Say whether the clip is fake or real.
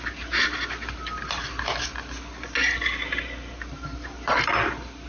real